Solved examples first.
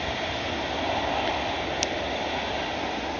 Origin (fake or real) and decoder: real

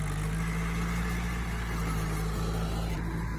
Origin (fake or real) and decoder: real